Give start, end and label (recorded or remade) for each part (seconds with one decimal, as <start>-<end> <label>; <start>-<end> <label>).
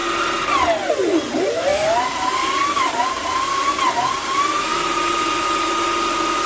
0.0-6.5 recorded